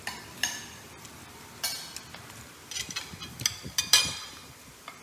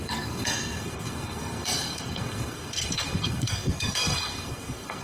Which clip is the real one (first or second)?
first